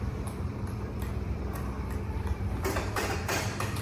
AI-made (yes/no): yes